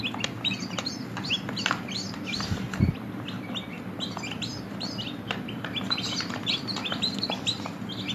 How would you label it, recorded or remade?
recorded